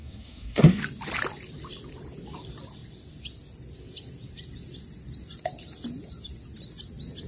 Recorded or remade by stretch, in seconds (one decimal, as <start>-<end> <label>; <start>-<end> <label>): 0.0-0.8 remade; 0.8-7.3 recorded